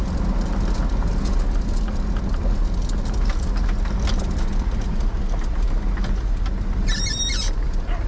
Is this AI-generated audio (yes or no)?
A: no